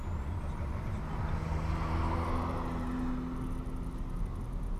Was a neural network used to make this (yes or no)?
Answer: no